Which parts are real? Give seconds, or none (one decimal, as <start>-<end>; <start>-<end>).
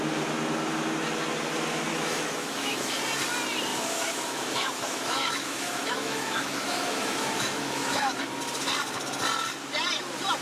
0.0-1.9; 3.0-3.7; 8.2-10.4